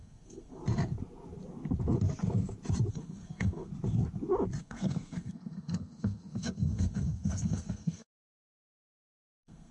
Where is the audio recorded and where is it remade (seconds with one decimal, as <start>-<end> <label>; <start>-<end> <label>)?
0.0-0.6 remade; 0.6-2.9 recorded; 2.9-3.7 remade; 3.7-4.6 recorded; 4.6-9.7 remade